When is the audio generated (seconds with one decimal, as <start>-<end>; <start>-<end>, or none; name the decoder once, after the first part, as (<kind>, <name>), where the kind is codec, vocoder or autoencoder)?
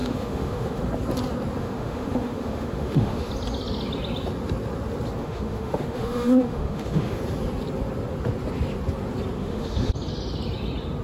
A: 0.0-0.8 (autoencoder, DAC-VAE); 1.6-3.3; 5.2-7.2; 9.4-9.9